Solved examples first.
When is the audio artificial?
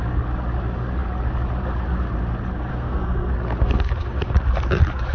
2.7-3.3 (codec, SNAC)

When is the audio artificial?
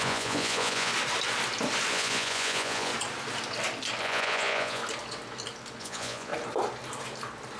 0.0-0.9 (vocoder, Vocos); 1.9-2.9; 4.0-4.8; 5.8-6.3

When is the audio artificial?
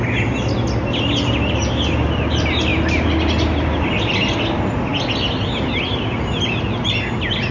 none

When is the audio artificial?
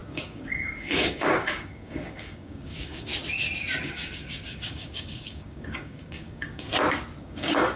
0.0-3.1 (codec, DAC); 3.8-6.7; 7.2-7.8